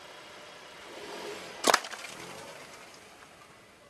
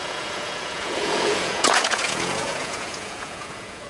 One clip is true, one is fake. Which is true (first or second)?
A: first